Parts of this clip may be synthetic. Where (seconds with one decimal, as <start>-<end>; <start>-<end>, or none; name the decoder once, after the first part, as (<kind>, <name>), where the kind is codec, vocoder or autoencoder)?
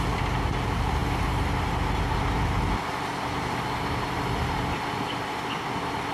none